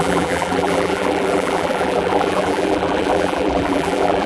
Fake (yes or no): yes